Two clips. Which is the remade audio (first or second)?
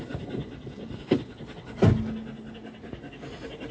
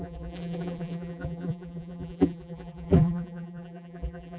second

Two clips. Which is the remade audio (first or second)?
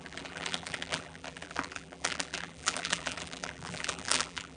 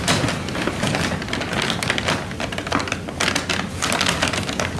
first